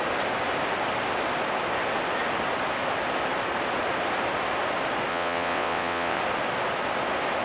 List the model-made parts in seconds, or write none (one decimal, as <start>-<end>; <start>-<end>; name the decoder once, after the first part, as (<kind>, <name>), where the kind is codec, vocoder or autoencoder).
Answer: 5.1-6.2 (vocoder, WaveNeXt)